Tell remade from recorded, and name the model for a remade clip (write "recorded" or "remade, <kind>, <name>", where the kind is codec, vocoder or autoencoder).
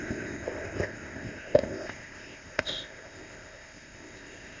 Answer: remade, codec, ZipCodec